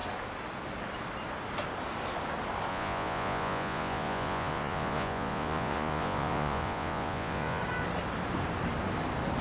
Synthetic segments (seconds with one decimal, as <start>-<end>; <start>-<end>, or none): 2.7-7.6